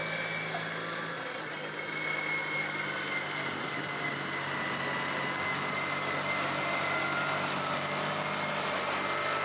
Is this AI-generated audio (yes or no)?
no